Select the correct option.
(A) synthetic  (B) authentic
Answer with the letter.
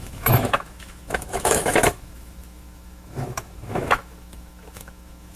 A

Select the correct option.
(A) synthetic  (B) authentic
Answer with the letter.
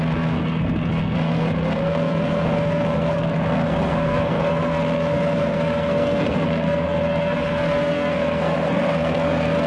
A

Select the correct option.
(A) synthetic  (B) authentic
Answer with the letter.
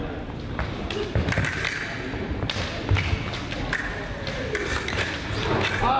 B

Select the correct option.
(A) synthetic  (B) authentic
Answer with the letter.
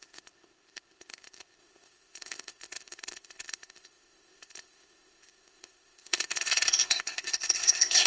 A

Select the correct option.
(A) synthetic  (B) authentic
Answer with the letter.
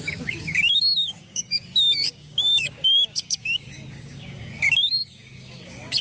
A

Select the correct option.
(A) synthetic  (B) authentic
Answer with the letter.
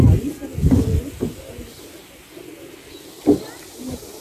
B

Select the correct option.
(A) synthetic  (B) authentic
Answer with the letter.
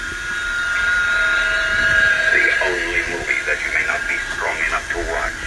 B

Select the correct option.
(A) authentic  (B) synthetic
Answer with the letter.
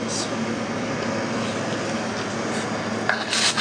A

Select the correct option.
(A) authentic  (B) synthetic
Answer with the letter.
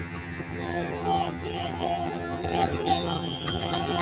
B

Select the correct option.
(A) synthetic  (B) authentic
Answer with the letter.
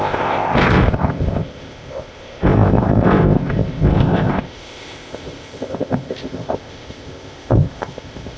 A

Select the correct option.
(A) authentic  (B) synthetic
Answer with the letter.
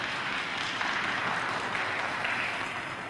A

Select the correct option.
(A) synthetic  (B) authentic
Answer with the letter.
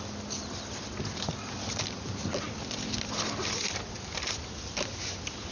B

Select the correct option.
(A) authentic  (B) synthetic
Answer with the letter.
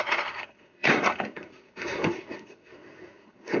B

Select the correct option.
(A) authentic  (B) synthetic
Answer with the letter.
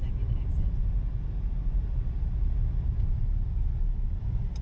A